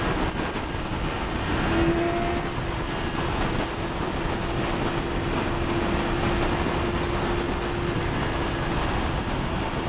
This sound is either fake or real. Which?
real